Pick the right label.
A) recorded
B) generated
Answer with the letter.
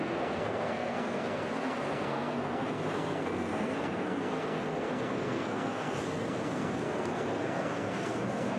B